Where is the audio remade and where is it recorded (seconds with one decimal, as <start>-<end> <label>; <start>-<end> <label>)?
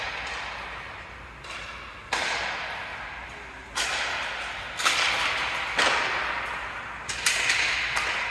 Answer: 0.0-8.3 recorded